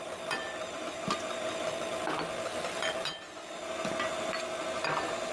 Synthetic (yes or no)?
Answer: no